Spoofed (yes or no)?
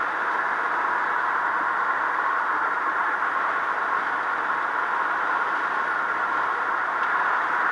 no